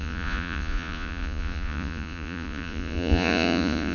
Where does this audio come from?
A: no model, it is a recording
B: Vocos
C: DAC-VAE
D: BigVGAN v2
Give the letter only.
B